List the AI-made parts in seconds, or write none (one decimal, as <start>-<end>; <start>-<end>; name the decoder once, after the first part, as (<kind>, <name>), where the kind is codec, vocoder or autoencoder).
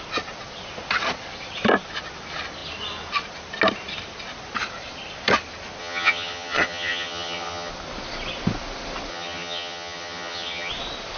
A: 5.8-7.7 (vocoder, HiFi-GAN); 9.1-10.7